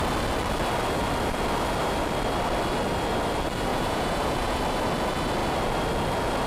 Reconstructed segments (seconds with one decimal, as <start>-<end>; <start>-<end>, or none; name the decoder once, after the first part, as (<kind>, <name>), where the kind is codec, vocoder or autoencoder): 3.7-4.6 (vocoder, Vocos)